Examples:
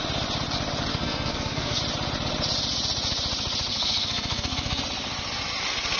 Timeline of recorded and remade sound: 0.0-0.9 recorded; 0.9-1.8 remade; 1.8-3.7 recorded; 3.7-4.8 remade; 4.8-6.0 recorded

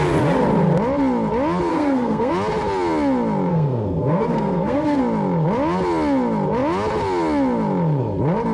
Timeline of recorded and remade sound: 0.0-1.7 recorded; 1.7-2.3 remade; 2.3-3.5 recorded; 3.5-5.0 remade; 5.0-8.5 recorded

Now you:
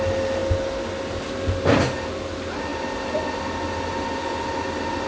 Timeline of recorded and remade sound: 0.0-5.1 recorded

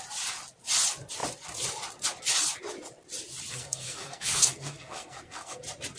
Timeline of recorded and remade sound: 0.0-3.5 recorded; 3.5-5.6 remade; 5.6-6.0 recorded

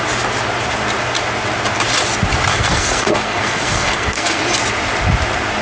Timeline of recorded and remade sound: 0.0-2.5 recorded; 2.5-4.4 remade; 4.4-5.6 recorded